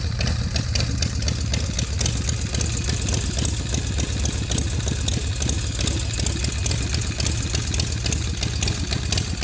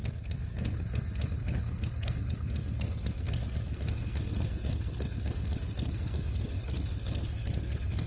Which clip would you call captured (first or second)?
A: first